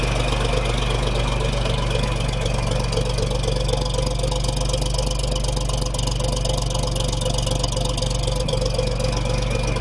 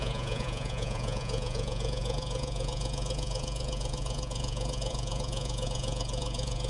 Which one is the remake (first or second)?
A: second